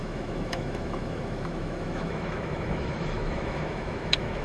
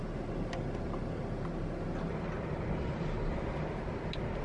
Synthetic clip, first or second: first